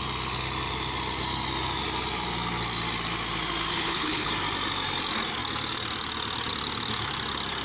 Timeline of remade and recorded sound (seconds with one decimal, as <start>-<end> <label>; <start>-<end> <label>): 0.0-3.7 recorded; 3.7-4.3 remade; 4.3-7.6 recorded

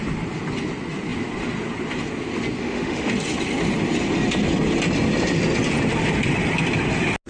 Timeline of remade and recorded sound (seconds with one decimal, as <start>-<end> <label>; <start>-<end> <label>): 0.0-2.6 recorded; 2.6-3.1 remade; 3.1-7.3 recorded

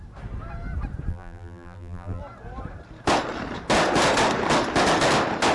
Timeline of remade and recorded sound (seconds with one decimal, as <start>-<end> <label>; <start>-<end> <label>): 0.0-1.1 recorded; 1.1-2.2 remade; 2.2-5.5 recorded

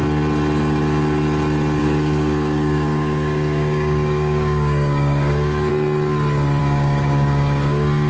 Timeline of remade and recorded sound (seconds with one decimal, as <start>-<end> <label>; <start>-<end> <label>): 0.0-1.8 recorded; 1.8-5.7 remade; 5.7-6.6 recorded; 6.6-8.1 remade

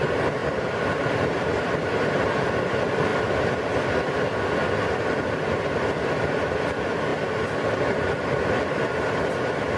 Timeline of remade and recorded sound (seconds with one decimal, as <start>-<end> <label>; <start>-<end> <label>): 0.0-9.8 recorded

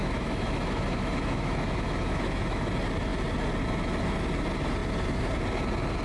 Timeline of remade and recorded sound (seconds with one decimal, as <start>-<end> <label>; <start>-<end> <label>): 0.0-2.7 remade; 2.7-6.0 recorded